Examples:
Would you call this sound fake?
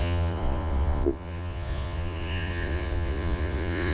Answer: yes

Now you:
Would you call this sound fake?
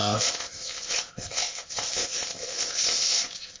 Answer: yes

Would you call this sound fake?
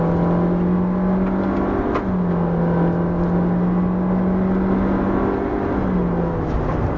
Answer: no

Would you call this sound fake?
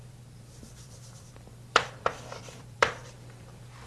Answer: yes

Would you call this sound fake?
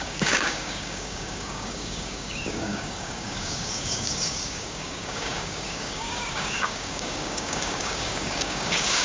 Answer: yes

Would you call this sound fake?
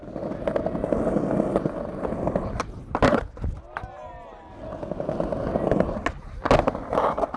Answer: no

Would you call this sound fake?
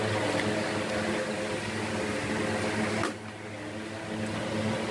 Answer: no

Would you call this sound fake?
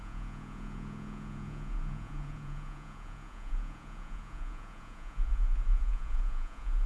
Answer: yes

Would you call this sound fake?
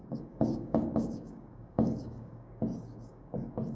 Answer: yes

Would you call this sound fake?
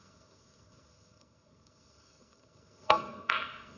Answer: yes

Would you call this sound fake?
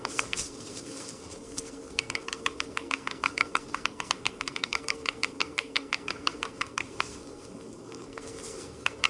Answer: yes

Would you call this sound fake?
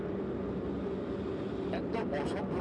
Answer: no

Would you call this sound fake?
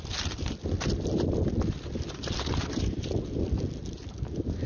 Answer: no